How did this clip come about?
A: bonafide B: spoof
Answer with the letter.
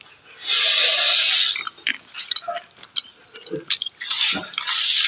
A